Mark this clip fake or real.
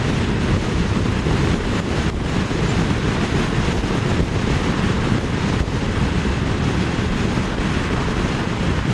real